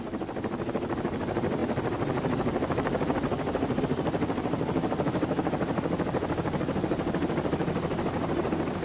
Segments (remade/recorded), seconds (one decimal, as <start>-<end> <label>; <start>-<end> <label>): 0.0-8.8 recorded

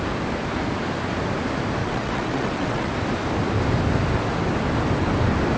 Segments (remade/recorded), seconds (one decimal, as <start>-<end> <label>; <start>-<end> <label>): 0.0-1.8 recorded; 1.8-2.9 remade; 2.9-5.6 recorded

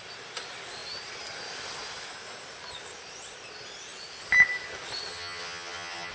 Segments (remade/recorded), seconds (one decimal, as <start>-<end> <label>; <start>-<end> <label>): 0.0-5.1 recorded; 5.1-6.1 remade